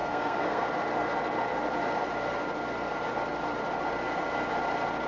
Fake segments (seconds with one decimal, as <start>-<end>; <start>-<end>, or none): 0.0-0.6